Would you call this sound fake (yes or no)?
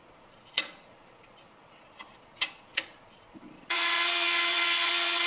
yes